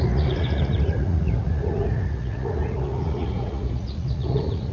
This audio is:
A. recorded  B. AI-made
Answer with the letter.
B